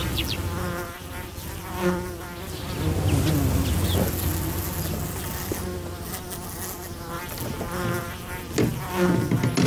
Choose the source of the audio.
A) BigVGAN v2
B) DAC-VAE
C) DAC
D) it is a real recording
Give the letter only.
D